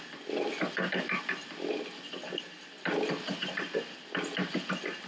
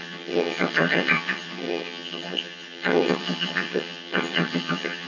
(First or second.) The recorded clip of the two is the first